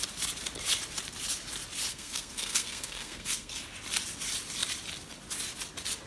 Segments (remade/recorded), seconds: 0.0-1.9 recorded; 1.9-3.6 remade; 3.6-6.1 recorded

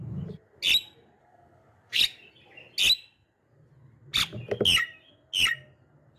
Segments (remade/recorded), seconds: 0.0-1.2 recorded; 1.2-2.0 remade; 2.0-6.2 recorded

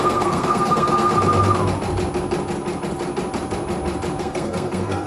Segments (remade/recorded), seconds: 0.0-1.1 remade; 1.1-4.2 recorded; 4.2-5.1 remade

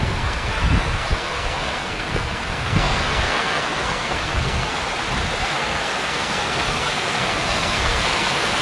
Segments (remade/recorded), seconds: 0.0-4.8 remade; 4.8-5.4 recorded; 5.4-8.6 remade

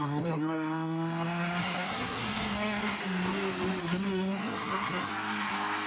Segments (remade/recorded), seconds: 0.0-3.0 remade; 3.0-3.8 recorded; 3.8-5.1 remade; 5.1-5.9 recorded